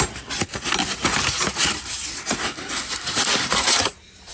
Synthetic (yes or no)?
no